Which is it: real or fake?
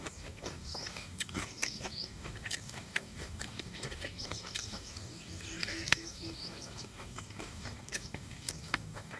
fake